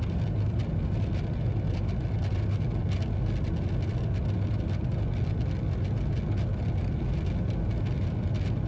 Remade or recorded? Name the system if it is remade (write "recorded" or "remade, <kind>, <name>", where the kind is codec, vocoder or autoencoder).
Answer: recorded